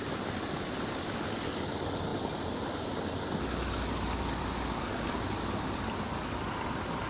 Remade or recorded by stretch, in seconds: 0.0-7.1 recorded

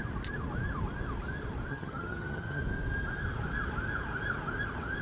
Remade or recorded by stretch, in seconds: 0.0-1.7 recorded; 1.7-2.6 remade; 2.6-5.0 recorded

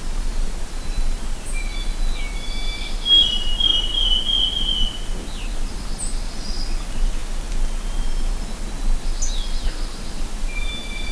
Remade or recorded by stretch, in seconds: 0.0-11.1 recorded

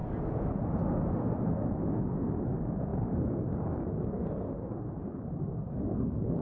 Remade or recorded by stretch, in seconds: 0.0-6.4 recorded

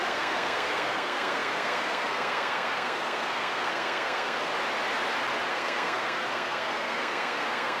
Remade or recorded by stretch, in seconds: 0.0-4.5 remade; 4.5-5.5 recorded; 5.5-7.8 remade

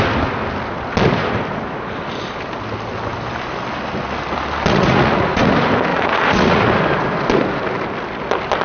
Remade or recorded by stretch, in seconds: 0.0-4.7 recorded; 4.7-5.5 remade; 5.5-5.9 recorded; 5.9-6.6 remade; 6.6-8.6 recorded

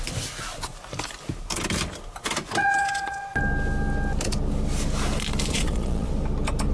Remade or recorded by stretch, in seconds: 0.0-2.6 recorded; 2.6-3.4 remade; 3.4-5.5 recorded; 5.5-6.1 remade; 6.1-6.7 recorded